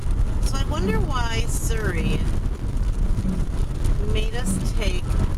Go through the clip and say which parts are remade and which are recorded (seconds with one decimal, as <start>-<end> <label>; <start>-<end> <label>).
0.0-5.4 recorded